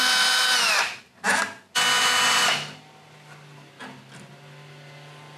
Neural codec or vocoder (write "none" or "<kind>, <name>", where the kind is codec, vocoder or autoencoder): none